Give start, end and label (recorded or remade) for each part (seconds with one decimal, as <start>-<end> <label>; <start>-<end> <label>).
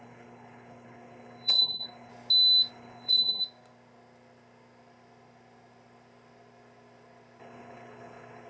0.0-2.1 remade; 2.1-2.7 recorded; 2.7-3.4 remade; 3.4-7.4 recorded; 7.4-8.5 remade